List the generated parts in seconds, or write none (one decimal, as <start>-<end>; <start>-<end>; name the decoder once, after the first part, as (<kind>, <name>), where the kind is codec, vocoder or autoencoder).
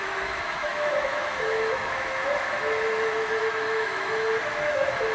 0.0-5.1 (autoencoder, DAC-VAE)